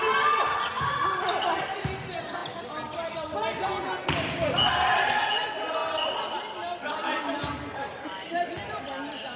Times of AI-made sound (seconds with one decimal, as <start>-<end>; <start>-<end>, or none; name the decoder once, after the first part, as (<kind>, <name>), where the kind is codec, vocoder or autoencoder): 5.8-8.8 (vocoder, BigVGAN v2)